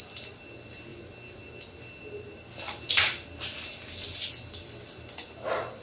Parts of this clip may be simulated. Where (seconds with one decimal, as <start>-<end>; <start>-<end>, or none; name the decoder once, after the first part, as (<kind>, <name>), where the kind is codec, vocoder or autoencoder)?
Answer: none